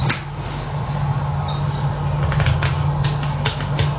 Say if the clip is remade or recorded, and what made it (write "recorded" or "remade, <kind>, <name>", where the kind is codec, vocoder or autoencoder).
recorded